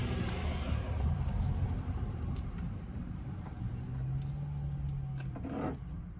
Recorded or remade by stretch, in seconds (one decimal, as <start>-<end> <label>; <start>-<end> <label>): 0.0-3.7 remade; 3.7-6.2 recorded

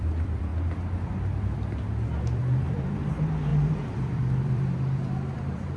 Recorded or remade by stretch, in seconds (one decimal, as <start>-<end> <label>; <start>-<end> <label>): 0.0-0.5 remade; 0.5-2.2 recorded; 2.2-5.8 remade

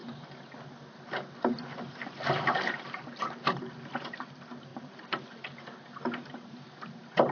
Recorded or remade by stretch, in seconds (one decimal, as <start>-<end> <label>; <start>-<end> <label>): 0.0-3.7 remade; 3.7-4.7 recorded; 4.7-5.4 remade; 5.4-7.3 recorded

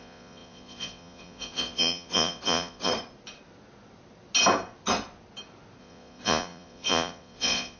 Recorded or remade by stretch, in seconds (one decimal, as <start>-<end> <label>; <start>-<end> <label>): 0.0-2.9 remade; 2.9-5.8 recorded; 5.8-7.8 remade

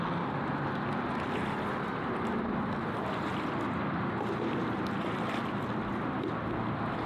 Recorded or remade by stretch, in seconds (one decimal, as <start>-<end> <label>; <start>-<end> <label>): 0.0-7.1 recorded

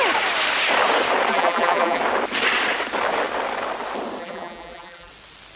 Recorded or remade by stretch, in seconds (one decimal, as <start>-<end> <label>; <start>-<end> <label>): 0.0-1.3 recorded; 1.3-2.0 remade; 2.0-4.2 recorded; 4.2-5.1 remade; 5.1-5.6 recorded

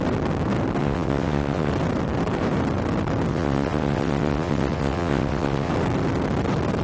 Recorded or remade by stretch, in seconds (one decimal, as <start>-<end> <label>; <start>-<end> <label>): 0.0-0.8 recorded; 0.8-1.7 remade; 1.7-3.3 recorded; 3.3-5.7 remade; 5.7-6.8 recorded